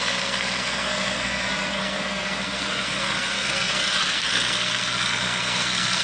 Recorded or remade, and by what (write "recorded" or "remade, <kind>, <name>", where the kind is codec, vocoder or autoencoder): remade, codec, SNAC